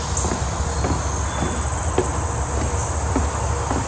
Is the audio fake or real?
real